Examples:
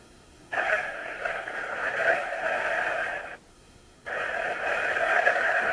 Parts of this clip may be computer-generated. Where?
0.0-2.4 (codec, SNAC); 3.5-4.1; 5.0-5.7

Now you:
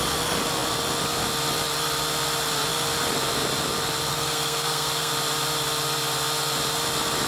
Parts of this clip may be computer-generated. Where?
4.1-5.1 (codec, SNAC)

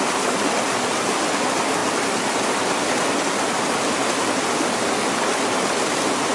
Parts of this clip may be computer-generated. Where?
none

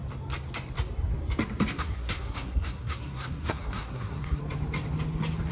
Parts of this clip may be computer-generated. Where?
1.7-4.4 (codec, SNAC)

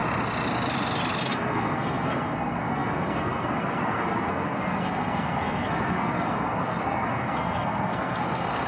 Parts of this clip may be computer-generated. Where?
1.2-8.7 (codec, SNAC)

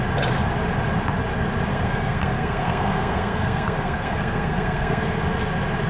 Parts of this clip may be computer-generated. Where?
1.7-5.2 (codec, SNAC)